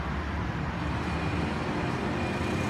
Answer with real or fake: real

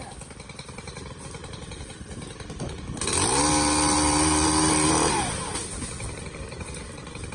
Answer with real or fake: real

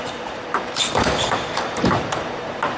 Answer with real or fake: fake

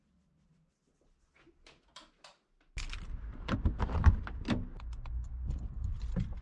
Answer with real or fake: real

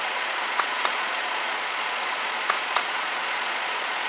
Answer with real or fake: fake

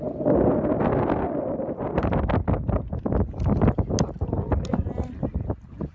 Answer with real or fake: real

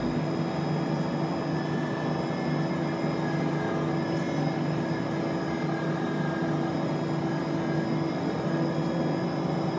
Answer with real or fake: real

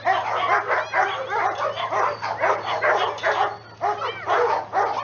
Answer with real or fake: real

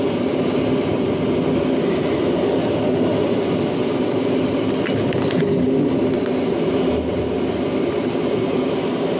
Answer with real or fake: real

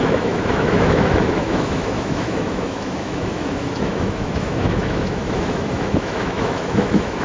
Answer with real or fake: fake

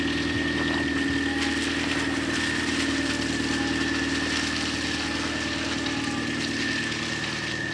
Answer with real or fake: real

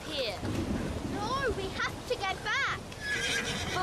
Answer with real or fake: real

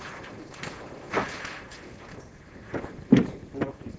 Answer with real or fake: real